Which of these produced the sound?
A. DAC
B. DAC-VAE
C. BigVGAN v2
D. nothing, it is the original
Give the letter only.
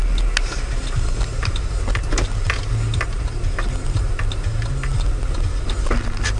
D